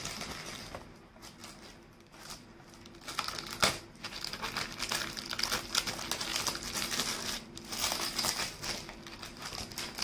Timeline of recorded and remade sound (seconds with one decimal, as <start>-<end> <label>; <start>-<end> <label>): 0.0-10.0 recorded